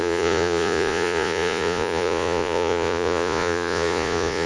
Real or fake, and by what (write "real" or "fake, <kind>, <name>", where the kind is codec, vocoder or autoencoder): fake, vocoder, Vocos